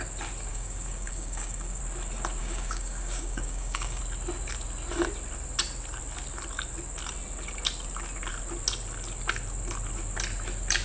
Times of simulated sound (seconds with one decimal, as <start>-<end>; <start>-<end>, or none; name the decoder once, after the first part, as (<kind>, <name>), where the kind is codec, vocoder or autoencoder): 0.5-1.8 (codec, DAC); 2.4-4.0